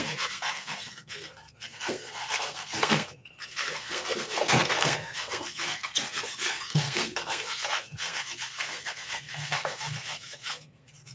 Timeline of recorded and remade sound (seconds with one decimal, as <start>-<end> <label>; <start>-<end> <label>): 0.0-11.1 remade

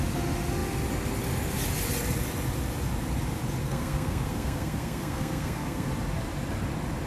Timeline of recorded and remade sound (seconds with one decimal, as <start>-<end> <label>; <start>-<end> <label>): 0.0-3.6 recorded; 3.6-5.9 remade; 5.9-7.1 recorded

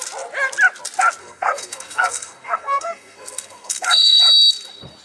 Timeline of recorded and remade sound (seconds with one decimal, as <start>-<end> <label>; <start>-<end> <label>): 0.0-1.2 recorded; 1.2-4.2 remade; 4.2-5.0 recorded

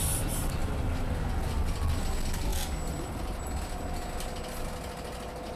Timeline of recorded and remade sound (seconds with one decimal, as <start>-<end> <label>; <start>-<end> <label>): 0.0-5.6 recorded

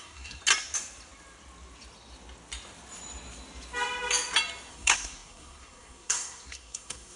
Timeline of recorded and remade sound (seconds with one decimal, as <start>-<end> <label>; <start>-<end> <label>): 0.0-0.4 remade; 0.4-4.7 recorded; 4.7-7.2 remade